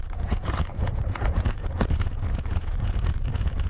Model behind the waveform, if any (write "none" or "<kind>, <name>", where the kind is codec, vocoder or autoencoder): vocoder, Vocos